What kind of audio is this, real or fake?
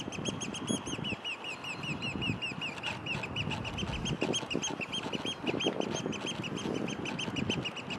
real